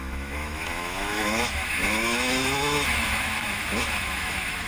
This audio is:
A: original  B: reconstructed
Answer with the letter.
B